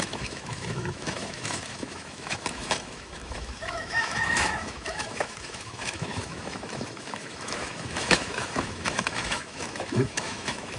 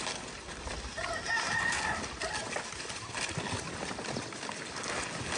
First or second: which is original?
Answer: second